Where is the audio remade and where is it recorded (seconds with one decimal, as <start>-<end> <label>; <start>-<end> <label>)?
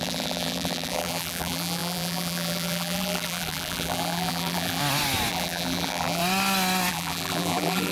0.0-4.8 remade; 4.8-5.3 recorded; 5.3-6.2 remade; 6.2-6.9 recorded; 6.9-7.9 remade